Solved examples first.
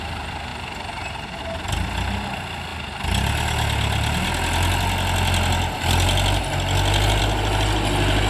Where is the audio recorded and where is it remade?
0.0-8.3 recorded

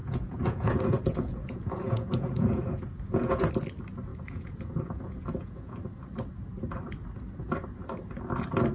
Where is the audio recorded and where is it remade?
0.0-3.5 remade; 3.5-4.1 recorded; 4.1-5.8 remade; 5.8-8.7 recorded

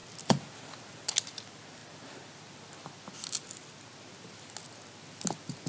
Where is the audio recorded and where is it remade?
0.0-5.7 recorded